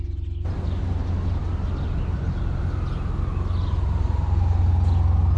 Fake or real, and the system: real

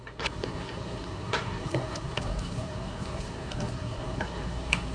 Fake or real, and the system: fake, codec, SNAC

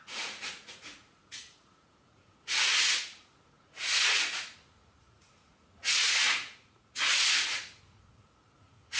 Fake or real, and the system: fake, vocoder, Vocos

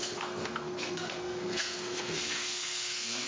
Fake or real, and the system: fake, codec, SNAC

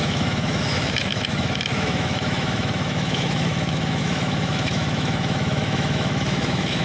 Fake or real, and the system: fake, autoencoder, DAC-VAE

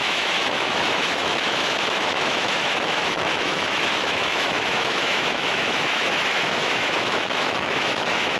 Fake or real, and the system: fake, autoencoder, DAC-VAE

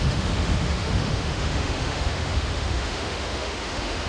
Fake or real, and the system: fake, autoencoder, DAC-VAE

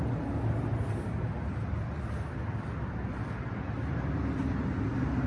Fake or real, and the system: real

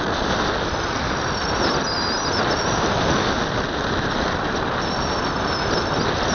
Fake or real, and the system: real